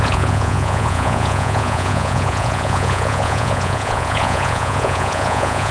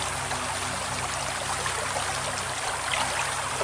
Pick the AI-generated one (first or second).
first